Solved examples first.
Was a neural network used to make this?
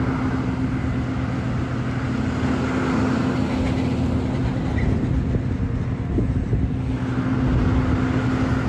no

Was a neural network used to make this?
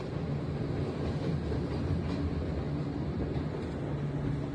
no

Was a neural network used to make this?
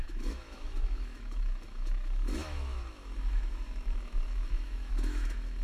yes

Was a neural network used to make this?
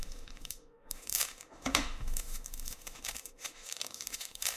yes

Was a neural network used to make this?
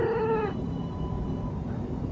no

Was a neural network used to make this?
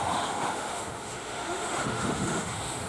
yes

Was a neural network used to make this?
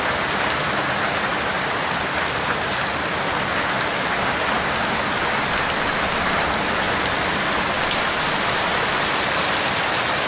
no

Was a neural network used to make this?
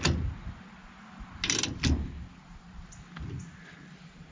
no